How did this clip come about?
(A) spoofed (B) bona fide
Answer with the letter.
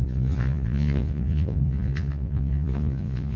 A